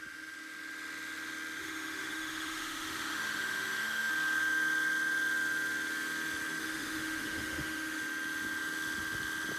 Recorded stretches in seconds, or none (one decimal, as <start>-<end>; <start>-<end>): 0.0-1.6; 4.1-6.6; 8.0-9.6